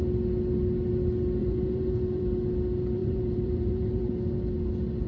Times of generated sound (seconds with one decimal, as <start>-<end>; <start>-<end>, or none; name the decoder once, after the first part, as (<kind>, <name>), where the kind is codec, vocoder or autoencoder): 1.4-2.2 (vocoder, BigVGAN v2); 3.0-4.0